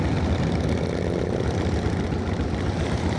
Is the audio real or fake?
real